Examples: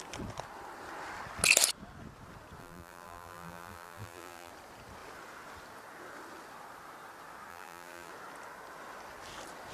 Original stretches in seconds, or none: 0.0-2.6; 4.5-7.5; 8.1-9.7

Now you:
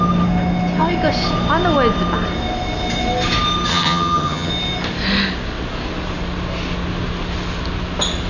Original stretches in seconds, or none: 0.0-3.7; 4.5-8.3

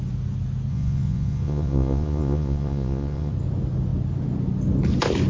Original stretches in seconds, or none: 0.0-0.7; 3.3-5.3

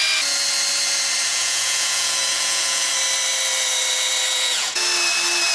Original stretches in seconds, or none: 0.0-1.3; 2.9-4.3; 4.8-5.5

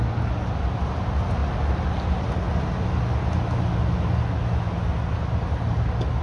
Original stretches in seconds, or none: 0.0-6.2

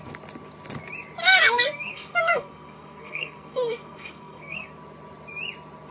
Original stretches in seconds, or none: 0.0-1.2; 4.7-5.9

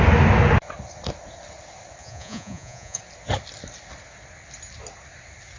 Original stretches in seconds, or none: 0.0-2.0; 3.0-5.6